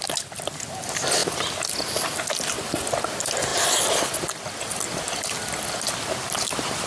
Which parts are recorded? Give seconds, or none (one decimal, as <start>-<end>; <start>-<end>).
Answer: 0.0-6.9